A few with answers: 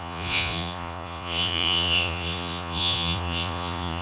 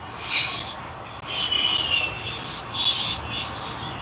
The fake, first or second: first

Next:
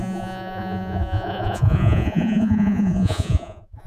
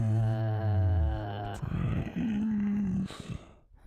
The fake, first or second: first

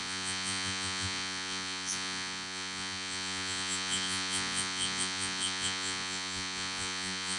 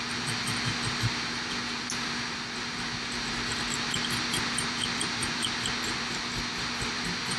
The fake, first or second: first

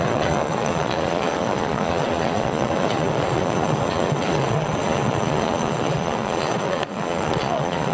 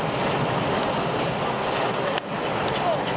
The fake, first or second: first